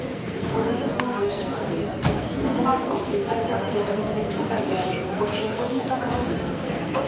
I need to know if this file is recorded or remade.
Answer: remade